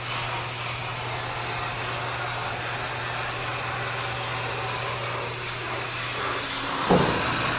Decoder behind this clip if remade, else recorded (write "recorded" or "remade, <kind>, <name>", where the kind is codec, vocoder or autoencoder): recorded